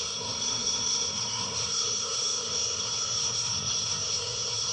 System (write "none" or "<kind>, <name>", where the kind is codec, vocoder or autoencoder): codec, SNAC